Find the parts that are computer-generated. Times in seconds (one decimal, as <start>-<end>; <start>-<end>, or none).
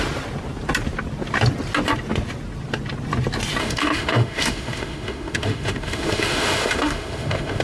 3.6-7.6